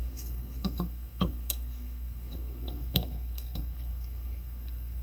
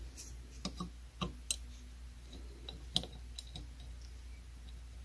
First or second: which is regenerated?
first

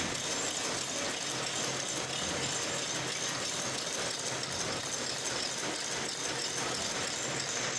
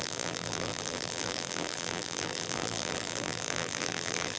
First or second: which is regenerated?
second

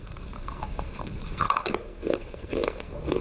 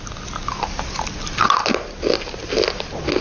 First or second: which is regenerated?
first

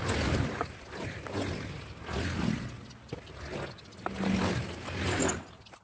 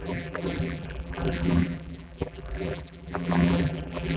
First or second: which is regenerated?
second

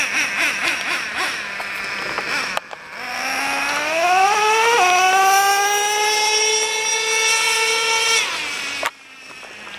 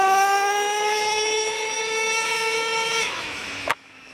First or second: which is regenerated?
second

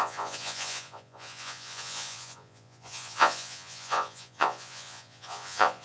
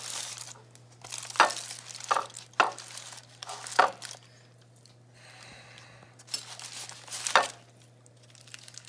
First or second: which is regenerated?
first